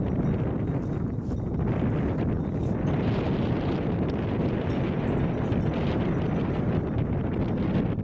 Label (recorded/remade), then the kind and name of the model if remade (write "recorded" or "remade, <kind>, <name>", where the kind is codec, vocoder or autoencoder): recorded